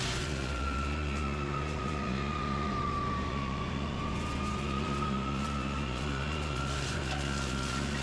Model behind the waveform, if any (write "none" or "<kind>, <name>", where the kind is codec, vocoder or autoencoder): vocoder, Vocos